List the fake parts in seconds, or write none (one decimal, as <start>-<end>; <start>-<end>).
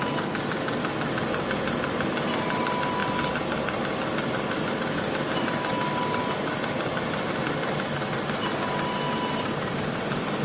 none